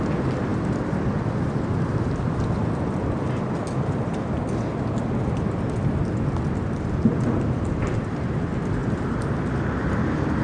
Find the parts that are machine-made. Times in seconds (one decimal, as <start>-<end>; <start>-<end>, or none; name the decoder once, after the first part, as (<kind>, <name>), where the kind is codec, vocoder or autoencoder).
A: 8.8-10.4 (vocoder, BigVGAN v2)